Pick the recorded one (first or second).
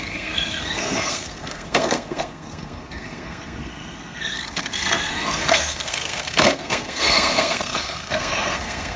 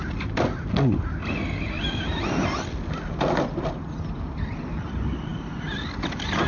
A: second